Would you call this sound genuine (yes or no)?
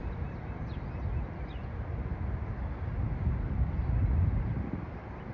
yes